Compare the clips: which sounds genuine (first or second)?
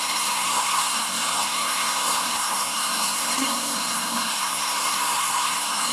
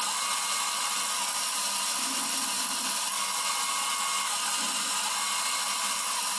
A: second